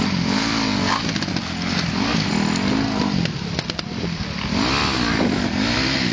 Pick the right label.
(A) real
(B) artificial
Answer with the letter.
A